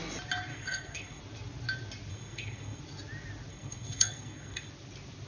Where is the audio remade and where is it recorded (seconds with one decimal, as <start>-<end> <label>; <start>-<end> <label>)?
0.0-0.5 recorded; 0.5-1.2 remade; 1.2-2.1 recorded; 2.1-2.8 remade; 2.8-3.5 recorded; 3.5-4.7 remade; 4.7-5.3 recorded